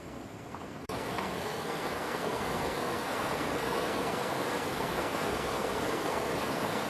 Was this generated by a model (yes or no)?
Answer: yes